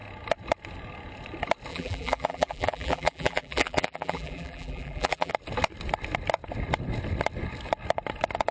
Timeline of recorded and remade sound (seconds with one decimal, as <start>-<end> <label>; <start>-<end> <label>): 0.0-1.7 recorded; 1.7-5.3 remade; 5.3-8.5 recorded